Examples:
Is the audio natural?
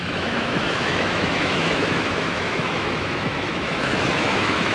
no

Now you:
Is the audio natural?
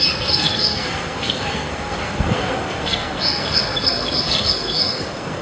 no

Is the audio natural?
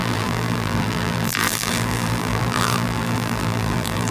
no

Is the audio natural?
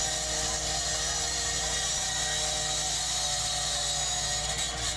yes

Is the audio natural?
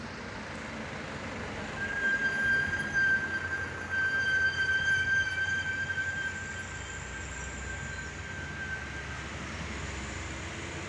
yes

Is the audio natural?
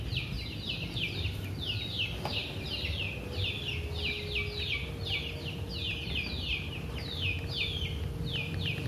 yes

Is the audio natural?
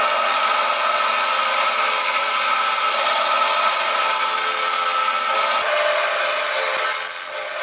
yes